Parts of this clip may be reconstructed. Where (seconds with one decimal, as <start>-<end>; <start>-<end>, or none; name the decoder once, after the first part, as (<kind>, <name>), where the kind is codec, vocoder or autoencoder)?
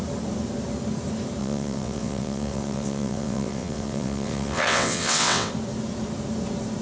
1.4-5.5 (vocoder, WaveNeXt)